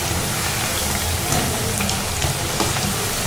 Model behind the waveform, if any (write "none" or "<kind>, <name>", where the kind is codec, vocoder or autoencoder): none